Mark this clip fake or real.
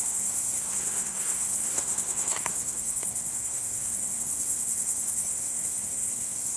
fake